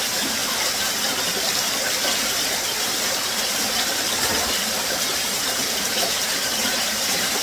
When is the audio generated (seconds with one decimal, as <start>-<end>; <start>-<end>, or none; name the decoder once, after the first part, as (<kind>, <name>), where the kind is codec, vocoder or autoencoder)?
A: 0.0-0.4 (vocoder, BigVGAN v2); 2.2-3.9; 5.1-7.4